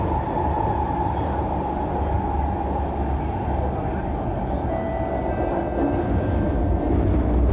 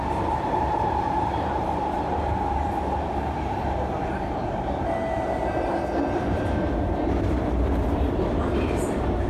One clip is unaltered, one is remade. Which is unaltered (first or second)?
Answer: first